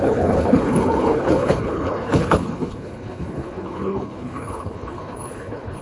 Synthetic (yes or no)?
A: yes